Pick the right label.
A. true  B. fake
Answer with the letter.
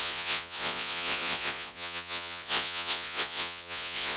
B